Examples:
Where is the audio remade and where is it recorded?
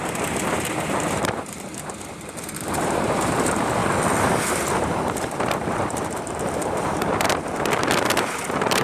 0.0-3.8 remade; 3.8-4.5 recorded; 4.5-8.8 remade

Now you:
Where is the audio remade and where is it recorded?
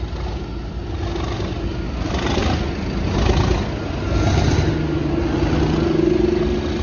0.0-6.8 recorded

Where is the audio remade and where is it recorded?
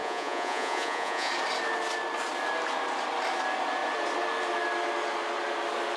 0.0-1.3 remade; 1.3-6.0 recorded